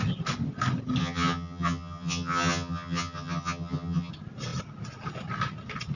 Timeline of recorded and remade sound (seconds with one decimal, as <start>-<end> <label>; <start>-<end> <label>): 0.0-1.0 recorded; 1.0-4.1 remade; 4.1-6.0 recorded